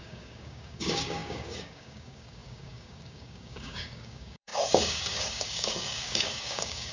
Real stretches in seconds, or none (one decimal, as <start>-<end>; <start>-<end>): none

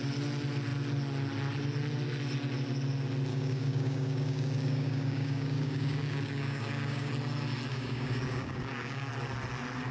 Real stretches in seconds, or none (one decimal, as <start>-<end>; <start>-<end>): 0.0-3.3; 7.1-7.7; 9.1-9.9

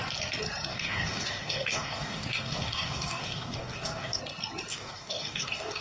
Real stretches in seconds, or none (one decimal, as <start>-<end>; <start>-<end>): 0.0-0.7; 4.2-4.7

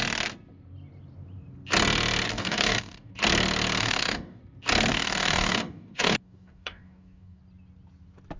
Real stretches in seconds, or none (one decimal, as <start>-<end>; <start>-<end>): 0.0-2.3; 3.1-3.8; 4.4-4.9; 7.4-8.4